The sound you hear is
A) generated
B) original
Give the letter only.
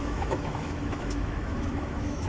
A